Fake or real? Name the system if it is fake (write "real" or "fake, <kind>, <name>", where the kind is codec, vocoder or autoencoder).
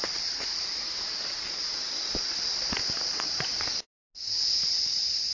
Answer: real